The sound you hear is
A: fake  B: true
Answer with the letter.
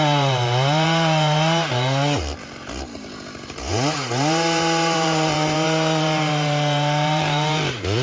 A